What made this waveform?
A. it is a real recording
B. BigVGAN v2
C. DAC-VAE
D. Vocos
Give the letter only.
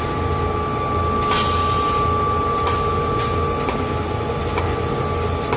A